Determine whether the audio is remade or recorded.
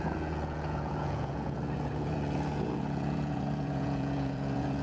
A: remade